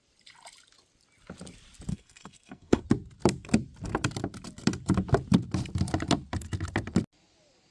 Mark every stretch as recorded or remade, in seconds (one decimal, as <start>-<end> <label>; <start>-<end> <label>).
0.0-1.9 recorded; 1.9-2.8 remade; 2.8-7.7 recorded